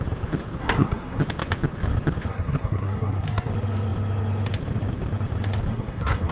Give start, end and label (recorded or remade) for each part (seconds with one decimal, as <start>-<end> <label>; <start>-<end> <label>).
0.0-0.6 recorded; 0.6-1.2 remade; 1.2-2.3 recorded; 2.3-3.5 remade; 3.5-5.7 recorded; 5.7-6.3 remade